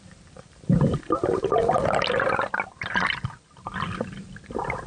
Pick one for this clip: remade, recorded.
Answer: remade